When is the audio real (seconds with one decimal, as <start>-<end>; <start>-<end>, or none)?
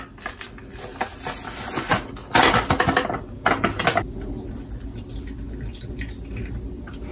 0.0-7.1